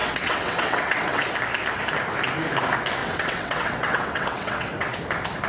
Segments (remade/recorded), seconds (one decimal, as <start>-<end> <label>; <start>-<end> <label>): 0.0-1.2 remade; 1.2-3.0 recorded; 3.0-5.0 remade; 5.0-5.5 recorded